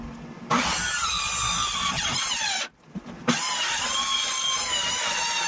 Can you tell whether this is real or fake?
fake